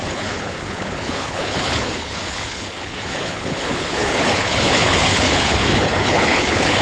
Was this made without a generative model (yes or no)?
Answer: no